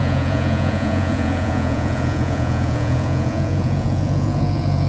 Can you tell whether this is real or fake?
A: fake